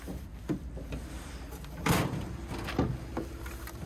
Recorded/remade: recorded